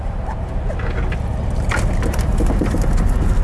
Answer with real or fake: real